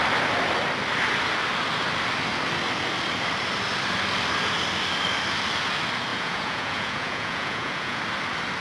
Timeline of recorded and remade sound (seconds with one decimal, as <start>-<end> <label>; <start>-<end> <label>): 0.0-6.1 recorded; 6.1-8.0 remade; 8.0-8.6 recorded